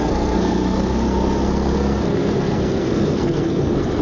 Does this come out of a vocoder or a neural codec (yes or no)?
yes